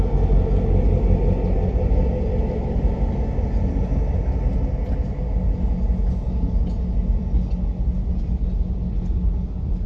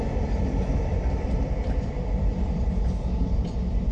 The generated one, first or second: second